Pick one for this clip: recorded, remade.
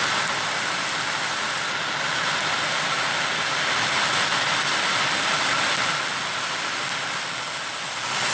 recorded